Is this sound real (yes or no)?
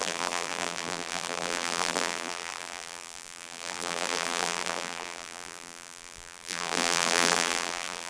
no